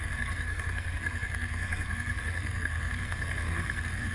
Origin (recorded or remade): remade